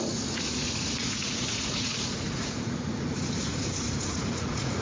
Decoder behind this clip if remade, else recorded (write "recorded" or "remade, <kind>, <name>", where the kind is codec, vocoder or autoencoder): remade, vocoder, Vocos